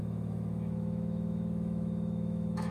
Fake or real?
fake